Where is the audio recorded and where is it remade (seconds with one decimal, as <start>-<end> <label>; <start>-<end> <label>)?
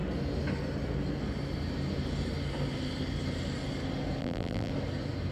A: 0.0-4.2 recorded; 4.2-4.7 remade; 4.7-5.3 recorded